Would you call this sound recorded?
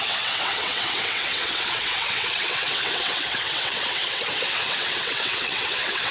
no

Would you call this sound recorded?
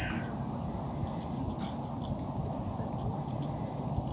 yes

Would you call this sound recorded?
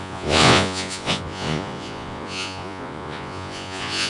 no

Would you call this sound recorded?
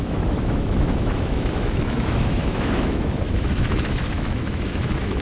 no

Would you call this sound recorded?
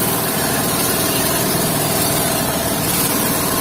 no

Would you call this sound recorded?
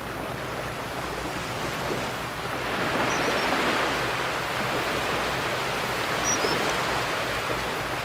yes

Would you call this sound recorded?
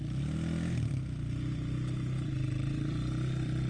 yes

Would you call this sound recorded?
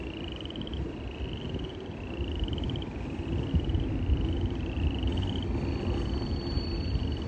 yes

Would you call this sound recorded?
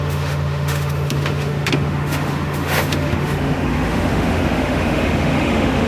no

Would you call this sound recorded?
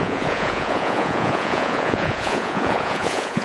no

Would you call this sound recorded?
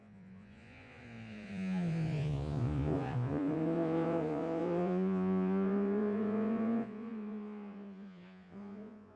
no